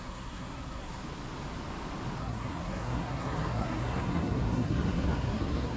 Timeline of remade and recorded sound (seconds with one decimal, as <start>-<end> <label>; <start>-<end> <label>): 0.0-1.0 remade; 1.0-2.2 recorded; 2.2-5.8 remade